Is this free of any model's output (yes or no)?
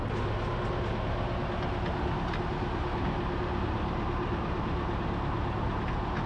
yes